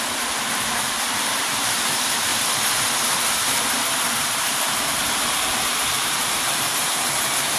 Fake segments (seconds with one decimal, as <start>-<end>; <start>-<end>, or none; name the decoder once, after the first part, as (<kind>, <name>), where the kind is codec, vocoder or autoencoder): 0.0-2.3 (vocoder, BigVGAN v2); 4.0-7.6